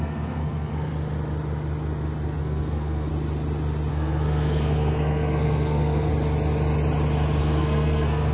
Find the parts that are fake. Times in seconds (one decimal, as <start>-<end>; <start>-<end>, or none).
0.0-0.9; 2.4-3.1; 3.9-6.1; 7.4-8.3